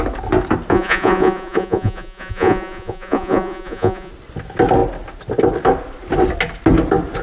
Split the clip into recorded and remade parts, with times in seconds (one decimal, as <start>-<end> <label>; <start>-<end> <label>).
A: 0.0-0.7 recorded; 0.7-4.1 remade; 4.1-7.2 recorded